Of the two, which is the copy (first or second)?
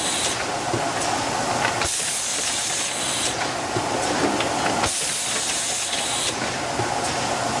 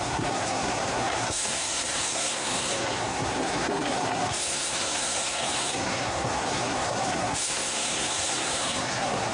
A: second